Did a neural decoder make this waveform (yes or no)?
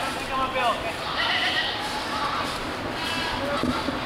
no